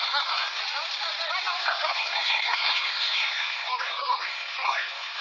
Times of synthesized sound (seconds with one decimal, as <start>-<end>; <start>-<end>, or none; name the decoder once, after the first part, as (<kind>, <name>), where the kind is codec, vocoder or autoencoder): 0.0-0.6 (codec, SNAC); 1.6-5.2